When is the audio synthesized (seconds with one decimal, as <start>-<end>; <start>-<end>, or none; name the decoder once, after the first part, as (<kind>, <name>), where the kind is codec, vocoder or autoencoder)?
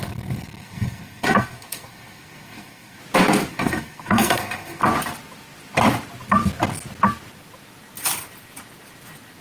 0.0-3.0 (codec, SNAC); 3.5-4.8